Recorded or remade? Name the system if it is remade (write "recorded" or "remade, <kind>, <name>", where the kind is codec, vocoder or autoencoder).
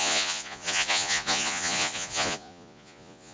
remade, vocoder, Vocos